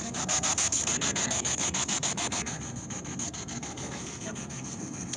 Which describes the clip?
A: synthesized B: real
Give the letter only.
A